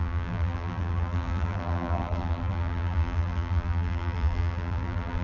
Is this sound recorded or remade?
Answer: remade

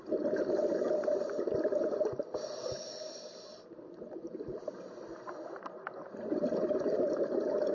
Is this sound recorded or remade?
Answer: recorded